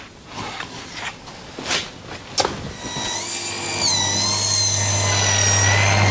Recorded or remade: recorded